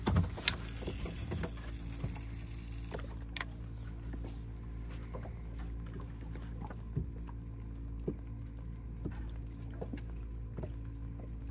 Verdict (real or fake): real